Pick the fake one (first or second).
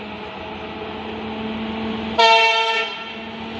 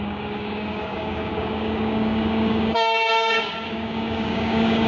second